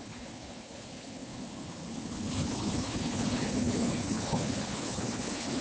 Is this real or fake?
fake